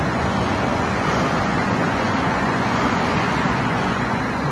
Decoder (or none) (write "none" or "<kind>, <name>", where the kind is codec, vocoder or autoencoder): vocoder, Vocos